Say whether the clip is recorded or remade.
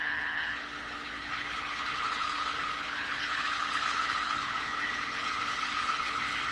remade